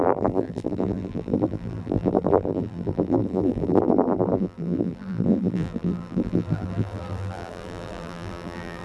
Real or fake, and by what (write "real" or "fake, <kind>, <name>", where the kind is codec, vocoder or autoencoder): fake, vocoder, BigVGAN v2